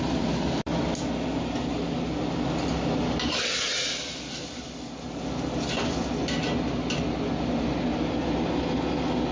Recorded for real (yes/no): yes